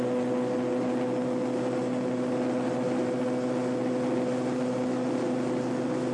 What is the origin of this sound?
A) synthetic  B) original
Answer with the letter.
B